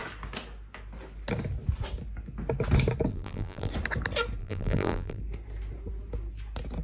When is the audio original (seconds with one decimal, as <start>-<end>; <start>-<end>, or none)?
0.0-3.1; 3.7-4.4; 5.2-6.8